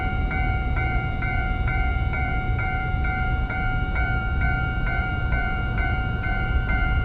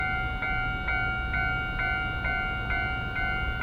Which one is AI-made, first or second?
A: first